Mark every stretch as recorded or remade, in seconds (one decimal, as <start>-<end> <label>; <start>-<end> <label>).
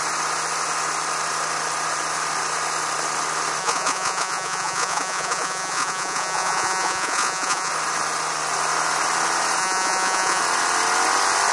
0.0-3.6 recorded; 3.6-7.7 remade; 7.7-9.6 recorded; 9.6-10.4 remade; 10.4-11.5 recorded